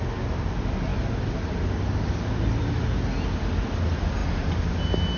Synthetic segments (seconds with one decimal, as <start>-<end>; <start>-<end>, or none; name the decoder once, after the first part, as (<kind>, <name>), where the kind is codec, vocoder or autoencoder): none